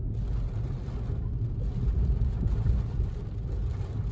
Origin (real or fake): real